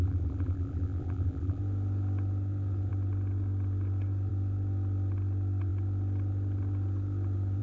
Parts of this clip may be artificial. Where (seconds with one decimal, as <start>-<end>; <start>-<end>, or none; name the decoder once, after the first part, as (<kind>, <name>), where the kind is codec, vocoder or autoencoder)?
0.0-1.6 (vocoder, BigVGAN v2)